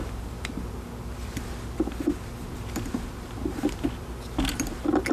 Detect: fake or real fake